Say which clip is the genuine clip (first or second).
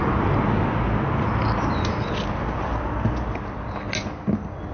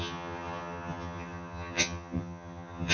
first